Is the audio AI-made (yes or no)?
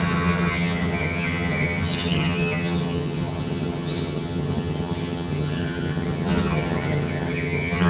yes